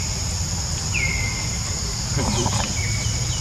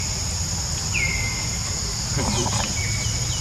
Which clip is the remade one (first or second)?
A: first